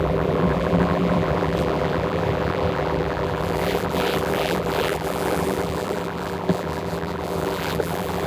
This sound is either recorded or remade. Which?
remade